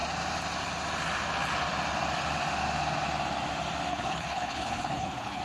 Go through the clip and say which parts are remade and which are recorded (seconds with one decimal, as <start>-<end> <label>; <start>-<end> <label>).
0.0-3.9 recorded; 3.9-5.4 remade